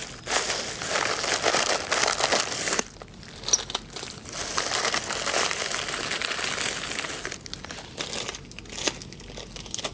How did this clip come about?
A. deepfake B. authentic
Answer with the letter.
B